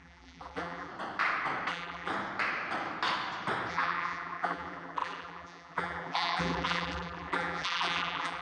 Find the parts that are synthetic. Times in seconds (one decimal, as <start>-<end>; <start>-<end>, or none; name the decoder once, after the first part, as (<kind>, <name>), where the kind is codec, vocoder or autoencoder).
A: 0.0-0.9 (vocoder, BigVGAN v2); 1.7-2.1; 3.7-8.4